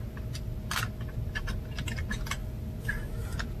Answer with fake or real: real